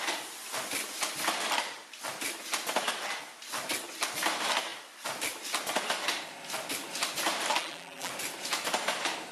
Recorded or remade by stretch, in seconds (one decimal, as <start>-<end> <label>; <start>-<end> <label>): 0.0-7.6 recorded; 7.6-8.1 remade; 8.1-9.3 recorded